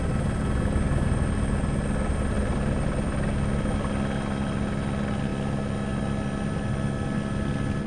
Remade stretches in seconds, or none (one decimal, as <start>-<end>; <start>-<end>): none